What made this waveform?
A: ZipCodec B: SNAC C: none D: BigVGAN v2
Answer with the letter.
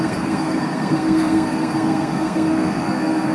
B